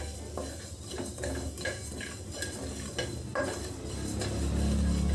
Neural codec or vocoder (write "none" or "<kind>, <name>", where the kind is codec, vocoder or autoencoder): none